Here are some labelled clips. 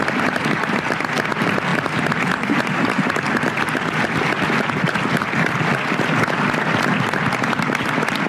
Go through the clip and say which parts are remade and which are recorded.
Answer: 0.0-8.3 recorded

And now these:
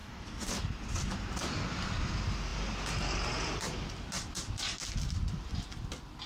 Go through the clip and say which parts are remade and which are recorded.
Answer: 0.0-0.5 remade; 0.5-6.3 recorded

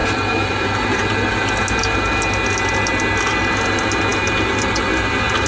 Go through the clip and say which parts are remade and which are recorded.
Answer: 0.0-5.5 recorded

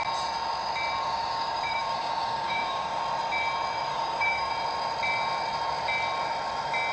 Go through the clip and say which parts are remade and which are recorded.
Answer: 0.0-1.0 recorded; 1.0-3.0 remade; 3.0-3.9 recorded; 3.9-4.5 remade; 4.5-6.9 recorded

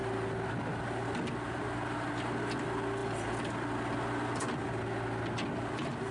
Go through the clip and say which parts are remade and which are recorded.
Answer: 0.0-6.1 recorded

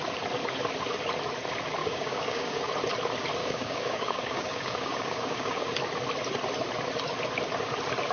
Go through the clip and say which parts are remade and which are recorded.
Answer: 0.0-1.8 recorded; 1.8-2.7 remade; 2.7-3.4 recorded; 3.4-5.7 remade; 5.7-8.1 recorded

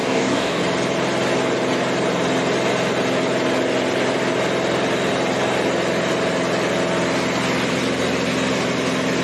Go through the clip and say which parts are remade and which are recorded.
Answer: 0.0-0.6 remade; 0.6-9.2 recorded